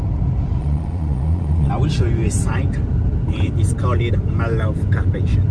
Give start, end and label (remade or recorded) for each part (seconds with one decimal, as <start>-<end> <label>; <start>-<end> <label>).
0.0-0.6 recorded; 0.6-1.7 remade; 1.7-5.5 recorded